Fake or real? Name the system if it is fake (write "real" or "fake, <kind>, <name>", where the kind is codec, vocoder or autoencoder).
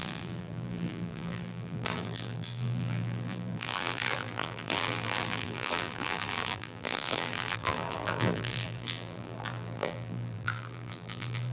fake, vocoder, BigVGAN v2